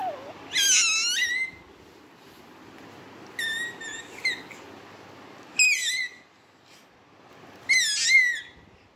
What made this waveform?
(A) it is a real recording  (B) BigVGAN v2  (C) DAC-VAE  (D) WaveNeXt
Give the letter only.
A